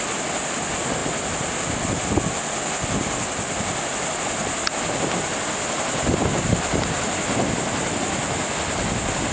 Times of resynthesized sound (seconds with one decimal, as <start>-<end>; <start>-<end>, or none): none

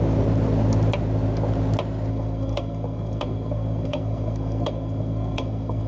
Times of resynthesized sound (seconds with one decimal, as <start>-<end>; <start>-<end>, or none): 2.1-5.9